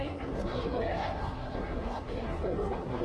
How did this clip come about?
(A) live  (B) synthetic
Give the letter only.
B